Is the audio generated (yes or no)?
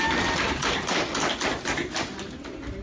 no